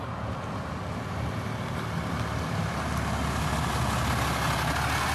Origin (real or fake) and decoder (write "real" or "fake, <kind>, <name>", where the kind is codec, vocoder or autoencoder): real